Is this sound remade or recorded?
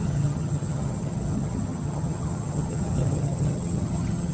remade